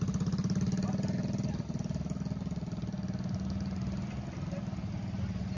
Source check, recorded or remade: recorded